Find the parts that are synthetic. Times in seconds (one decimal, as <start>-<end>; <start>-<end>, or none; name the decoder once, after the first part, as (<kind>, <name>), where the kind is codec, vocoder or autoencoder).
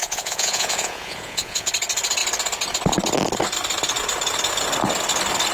0.0-1.7 (vocoder, Vocos)